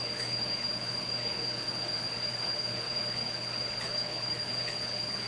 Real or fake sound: fake